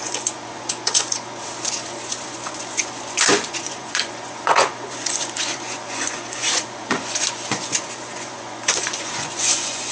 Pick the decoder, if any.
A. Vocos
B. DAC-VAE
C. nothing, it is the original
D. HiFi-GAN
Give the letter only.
A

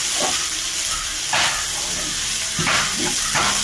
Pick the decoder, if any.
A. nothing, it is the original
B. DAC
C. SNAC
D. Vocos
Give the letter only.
A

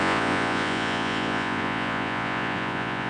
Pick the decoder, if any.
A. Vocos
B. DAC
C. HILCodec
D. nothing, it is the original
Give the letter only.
A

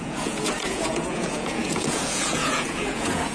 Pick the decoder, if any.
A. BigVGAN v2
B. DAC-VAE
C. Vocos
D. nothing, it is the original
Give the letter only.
C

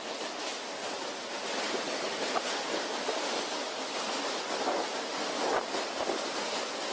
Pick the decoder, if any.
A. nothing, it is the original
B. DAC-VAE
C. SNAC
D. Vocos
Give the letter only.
A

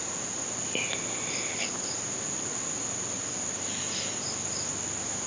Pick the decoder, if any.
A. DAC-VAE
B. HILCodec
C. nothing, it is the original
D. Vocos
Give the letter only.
C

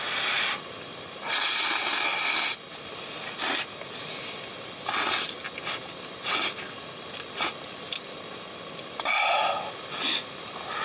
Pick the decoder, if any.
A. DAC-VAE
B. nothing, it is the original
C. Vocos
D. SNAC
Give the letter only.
B